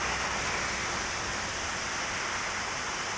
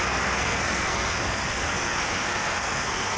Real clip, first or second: first